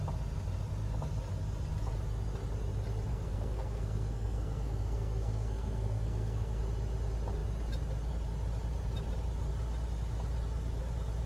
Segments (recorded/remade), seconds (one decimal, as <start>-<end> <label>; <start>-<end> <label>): 0.0-3.1 recorded; 3.1-6.6 remade; 6.6-11.3 recorded